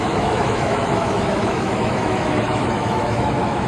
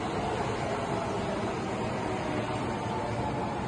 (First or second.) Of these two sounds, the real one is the second